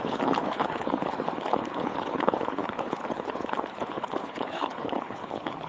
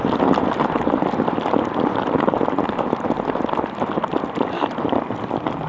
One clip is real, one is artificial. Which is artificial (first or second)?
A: first